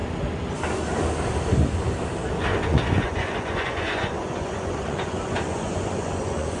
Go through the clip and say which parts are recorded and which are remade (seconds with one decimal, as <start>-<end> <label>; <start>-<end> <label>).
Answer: 0.0-2.5 recorded; 2.5-6.6 remade